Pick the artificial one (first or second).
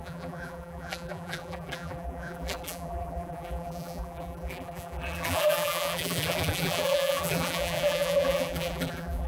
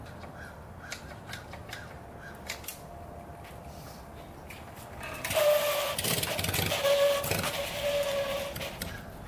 first